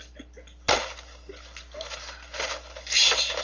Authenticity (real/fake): real